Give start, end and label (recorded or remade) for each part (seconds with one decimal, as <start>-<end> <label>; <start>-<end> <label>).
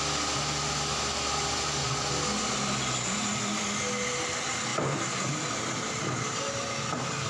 0.0-7.3 recorded